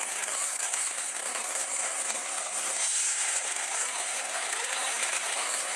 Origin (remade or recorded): remade